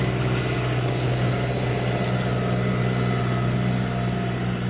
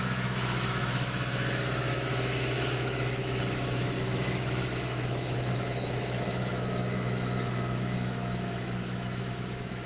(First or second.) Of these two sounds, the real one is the first